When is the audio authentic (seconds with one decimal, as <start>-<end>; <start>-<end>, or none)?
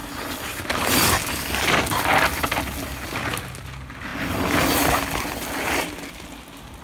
0.0-6.8